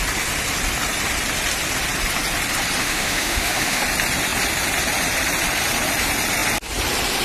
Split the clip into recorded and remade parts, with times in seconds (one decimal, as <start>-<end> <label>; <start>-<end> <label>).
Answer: 0.0-2.8 recorded; 2.8-3.8 remade; 3.8-7.2 recorded